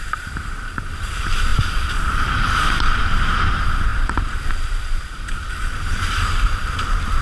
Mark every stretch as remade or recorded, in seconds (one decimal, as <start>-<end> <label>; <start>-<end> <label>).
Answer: 0.0-7.2 remade